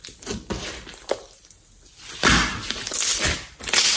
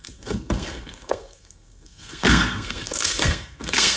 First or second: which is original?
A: first